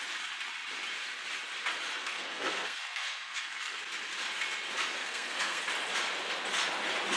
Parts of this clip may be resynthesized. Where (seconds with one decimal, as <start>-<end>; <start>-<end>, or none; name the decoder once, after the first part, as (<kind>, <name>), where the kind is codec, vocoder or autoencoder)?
2.0-3.8 (codec, SNAC); 5.0-5.6